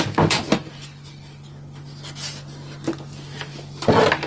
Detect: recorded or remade recorded